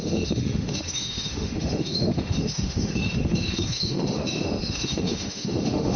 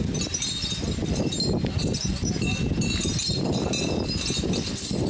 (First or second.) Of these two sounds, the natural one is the second